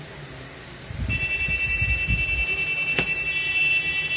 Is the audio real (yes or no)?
yes